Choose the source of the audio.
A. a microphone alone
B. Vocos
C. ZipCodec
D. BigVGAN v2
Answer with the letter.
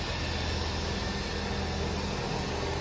A